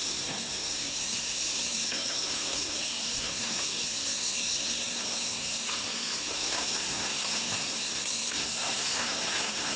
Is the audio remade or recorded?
remade